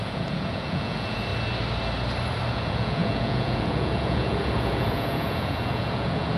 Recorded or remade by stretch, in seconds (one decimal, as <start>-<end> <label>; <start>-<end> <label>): 0.0-1.3 remade; 1.3-2.5 recorded; 2.5-6.4 remade